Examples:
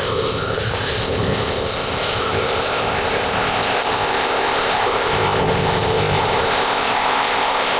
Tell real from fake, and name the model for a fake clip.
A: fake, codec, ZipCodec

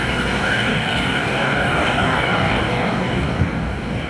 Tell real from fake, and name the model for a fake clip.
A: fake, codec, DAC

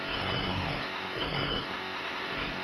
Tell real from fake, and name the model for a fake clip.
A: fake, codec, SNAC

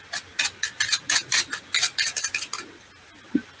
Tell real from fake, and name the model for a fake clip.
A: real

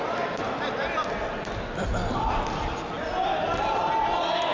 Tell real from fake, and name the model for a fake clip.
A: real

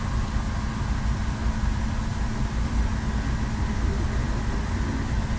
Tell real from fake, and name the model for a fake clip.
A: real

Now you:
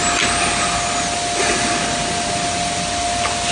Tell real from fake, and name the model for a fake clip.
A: real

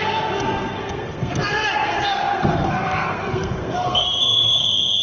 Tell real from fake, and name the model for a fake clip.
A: fake, codec, SNAC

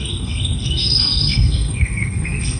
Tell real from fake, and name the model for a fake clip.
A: fake, codec, SNAC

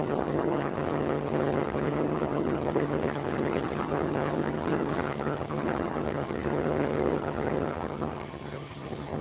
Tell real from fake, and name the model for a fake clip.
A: fake, vocoder, HiFi-GAN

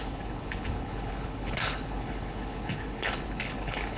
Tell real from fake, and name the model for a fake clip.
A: fake, codec, HILCodec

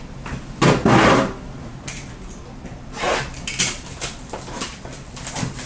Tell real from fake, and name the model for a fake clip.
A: real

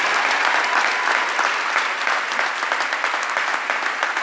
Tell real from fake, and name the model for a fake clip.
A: real